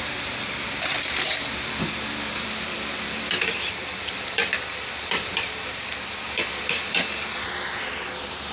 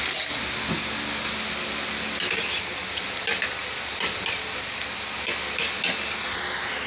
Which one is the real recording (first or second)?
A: second